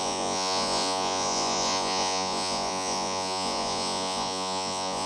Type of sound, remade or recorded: remade